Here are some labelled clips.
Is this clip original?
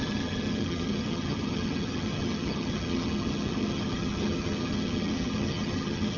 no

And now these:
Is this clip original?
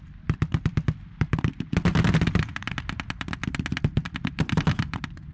no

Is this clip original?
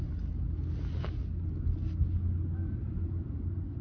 yes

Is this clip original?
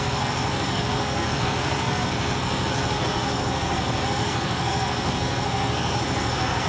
no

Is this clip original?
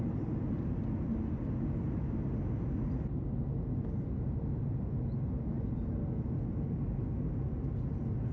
yes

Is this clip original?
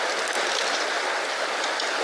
yes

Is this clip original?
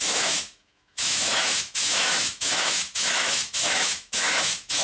no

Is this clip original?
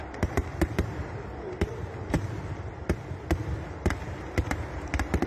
yes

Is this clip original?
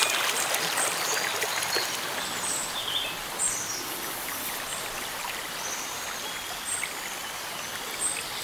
yes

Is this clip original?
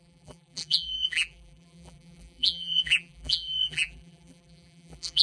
no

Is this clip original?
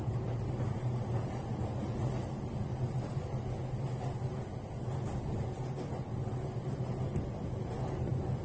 yes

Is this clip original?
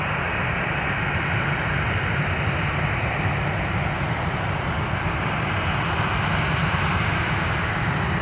yes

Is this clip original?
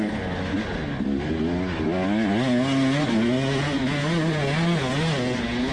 yes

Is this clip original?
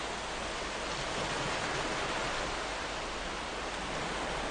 yes